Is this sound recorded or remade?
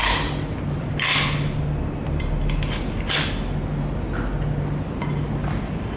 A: recorded